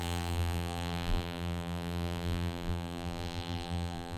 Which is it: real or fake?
fake